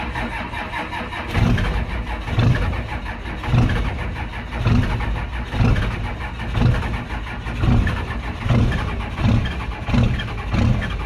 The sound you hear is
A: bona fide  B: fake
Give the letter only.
A